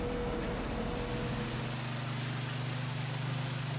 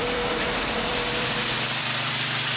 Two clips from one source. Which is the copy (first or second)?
second